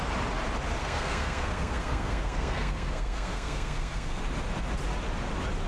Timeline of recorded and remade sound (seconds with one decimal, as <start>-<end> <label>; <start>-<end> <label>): 0.0-0.8 recorded; 0.8-4.2 remade; 4.2-5.7 recorded